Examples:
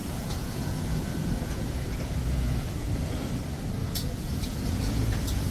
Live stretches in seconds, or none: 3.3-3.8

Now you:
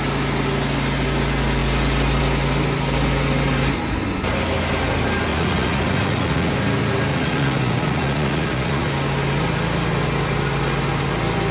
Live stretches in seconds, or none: 0.0-5.3; 6.5-7.1; 8.9-11.5

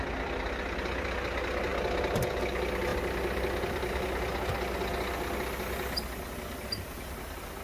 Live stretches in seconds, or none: 0.0-7.6

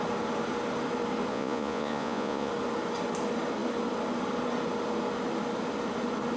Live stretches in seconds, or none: 0.0-1.3; 2.5-6.4

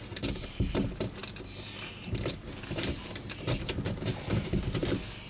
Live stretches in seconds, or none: 0.0-5.3

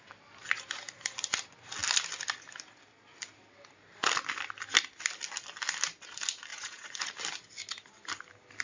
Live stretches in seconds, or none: 0.0-6.5; 7.1-8.6

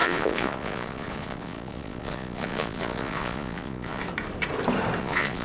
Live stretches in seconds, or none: 4.0-5.0

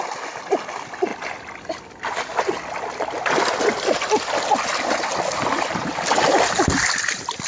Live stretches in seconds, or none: 0.0-7.5